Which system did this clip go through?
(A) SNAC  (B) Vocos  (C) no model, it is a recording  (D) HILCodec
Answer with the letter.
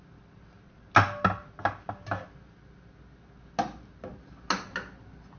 C